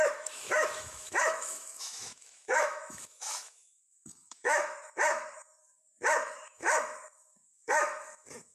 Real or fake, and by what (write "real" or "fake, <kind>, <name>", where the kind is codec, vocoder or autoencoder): fake, autoencoder, DAC-VAE